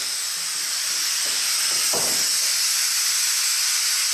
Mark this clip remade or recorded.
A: recorded